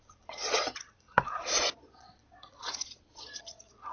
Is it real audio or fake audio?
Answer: fake